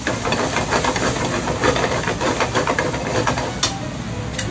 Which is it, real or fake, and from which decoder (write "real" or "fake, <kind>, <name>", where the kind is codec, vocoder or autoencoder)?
real